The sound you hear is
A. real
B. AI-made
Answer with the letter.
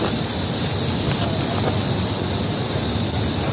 A